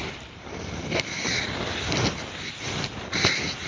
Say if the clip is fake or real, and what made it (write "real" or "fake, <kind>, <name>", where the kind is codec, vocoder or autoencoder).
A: real